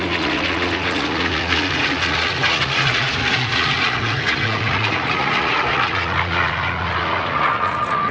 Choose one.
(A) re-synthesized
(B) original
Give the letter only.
A